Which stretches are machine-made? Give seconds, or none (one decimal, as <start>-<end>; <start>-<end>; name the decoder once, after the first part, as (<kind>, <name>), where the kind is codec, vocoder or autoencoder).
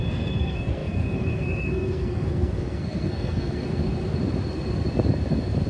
0.0-3.8 (codec, SNAC)